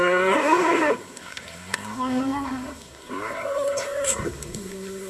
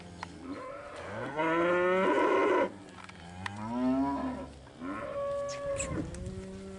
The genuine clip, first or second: second